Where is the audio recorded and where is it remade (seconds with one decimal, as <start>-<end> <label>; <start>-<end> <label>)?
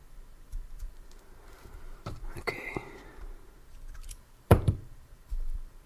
0.0-5.9 remade